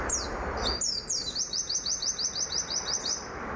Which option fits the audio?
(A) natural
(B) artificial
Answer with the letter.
B